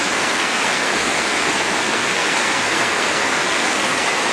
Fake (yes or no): yes